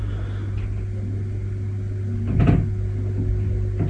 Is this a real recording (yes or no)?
yes